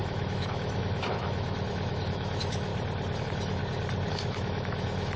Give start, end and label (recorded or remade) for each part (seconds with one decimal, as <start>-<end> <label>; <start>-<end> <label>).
0.0-2.7 remade; 2.7-3.2 recorded; 3.2-3.6 remade; 3.6-4.1 recorded; 4.1-5.2 remade